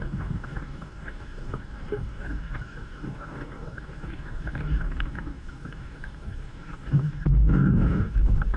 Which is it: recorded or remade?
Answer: remade